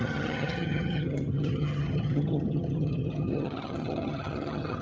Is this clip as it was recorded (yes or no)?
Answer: no